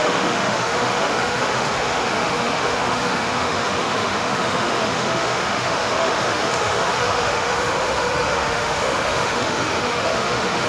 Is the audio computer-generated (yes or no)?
yes